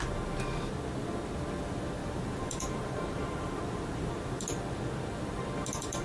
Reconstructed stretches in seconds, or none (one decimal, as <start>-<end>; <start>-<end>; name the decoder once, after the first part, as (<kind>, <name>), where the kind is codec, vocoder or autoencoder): 2.0-4.1 (vocoder, BigVGAN v2)